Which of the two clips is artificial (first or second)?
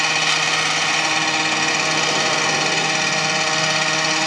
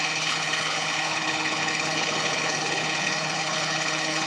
second